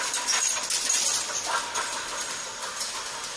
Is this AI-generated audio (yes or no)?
no